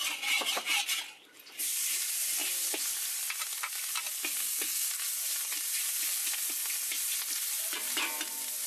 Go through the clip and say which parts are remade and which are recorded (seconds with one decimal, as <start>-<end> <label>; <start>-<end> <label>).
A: 0.0-4.4 recorded; 4.4-4.9 remade; 4.9-8.7 recorded